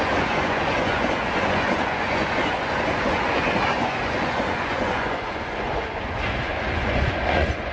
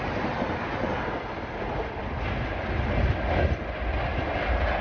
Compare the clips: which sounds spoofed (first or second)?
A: first